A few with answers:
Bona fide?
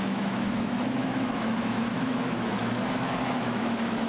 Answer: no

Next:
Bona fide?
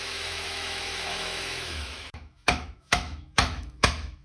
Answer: no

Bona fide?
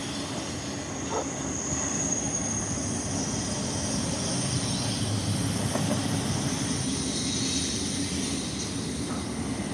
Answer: yes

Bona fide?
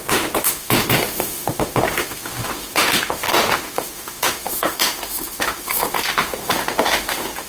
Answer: no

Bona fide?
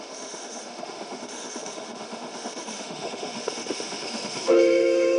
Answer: no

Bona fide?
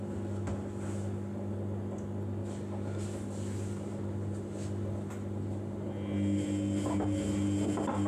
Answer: yes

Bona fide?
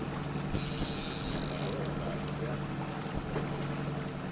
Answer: yes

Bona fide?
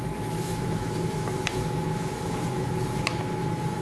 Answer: no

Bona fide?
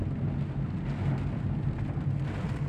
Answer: yes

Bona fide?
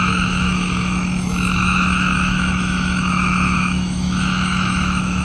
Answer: no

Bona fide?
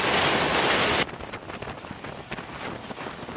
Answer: yes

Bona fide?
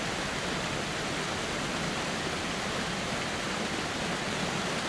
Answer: yes